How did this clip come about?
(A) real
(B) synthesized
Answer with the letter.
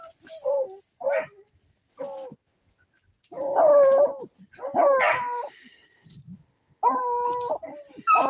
A